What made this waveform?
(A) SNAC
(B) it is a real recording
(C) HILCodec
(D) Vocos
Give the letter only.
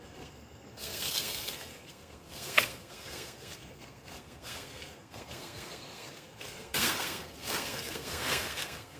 A